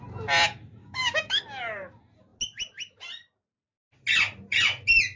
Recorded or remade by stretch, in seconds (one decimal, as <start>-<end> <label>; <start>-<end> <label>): 0.0-0.8 recorded; 0.8-1.4 remade; 1.4-5.2 recorded